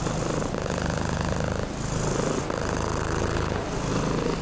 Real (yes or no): yes